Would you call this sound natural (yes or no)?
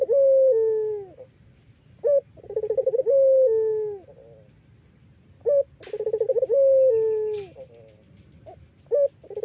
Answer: yes